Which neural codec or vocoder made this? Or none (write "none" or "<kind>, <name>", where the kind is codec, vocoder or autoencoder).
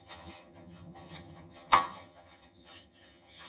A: vocoder, HiFi-GAN